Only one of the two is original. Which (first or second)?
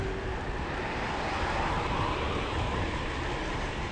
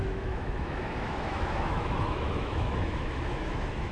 first